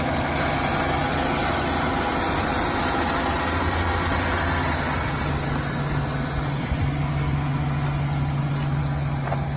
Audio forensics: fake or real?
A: real